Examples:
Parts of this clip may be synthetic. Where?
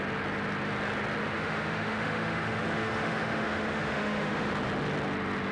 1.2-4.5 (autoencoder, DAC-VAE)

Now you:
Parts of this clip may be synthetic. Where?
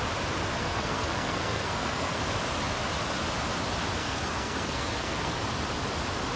0.6-2.2 (codec, SNAC); 4.0-5.4